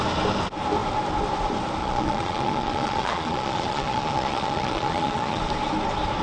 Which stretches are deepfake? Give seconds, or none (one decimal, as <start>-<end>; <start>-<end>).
1.8-5.4